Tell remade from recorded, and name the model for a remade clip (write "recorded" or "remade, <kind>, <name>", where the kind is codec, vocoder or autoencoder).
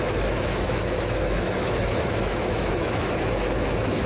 remade, autoencoder, DAC-VAE